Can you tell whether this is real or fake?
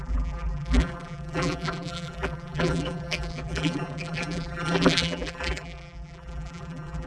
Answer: fake